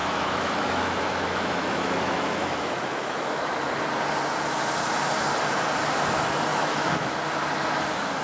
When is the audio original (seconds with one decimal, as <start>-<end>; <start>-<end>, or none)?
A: 3.7-6.5; 7.1-8.2